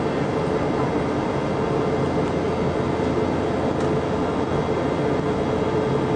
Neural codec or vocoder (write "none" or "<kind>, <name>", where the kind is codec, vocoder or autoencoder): none